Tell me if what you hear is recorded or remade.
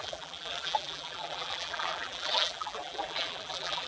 remade